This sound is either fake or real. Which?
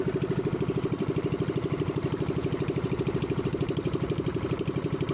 fake